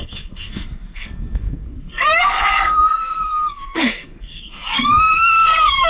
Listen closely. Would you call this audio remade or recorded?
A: remade